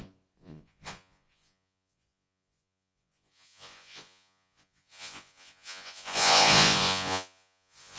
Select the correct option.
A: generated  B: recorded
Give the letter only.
A